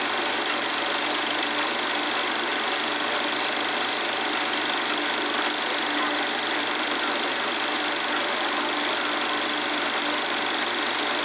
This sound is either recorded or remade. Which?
recorded